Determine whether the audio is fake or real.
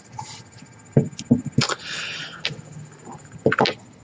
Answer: real